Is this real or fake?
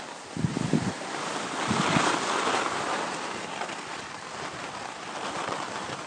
real